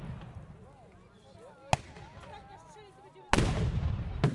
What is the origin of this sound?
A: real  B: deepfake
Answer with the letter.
A